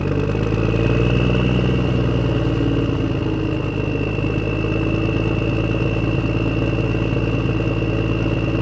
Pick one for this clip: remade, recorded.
recorded